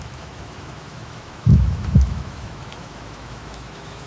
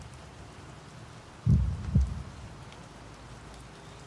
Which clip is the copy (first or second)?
first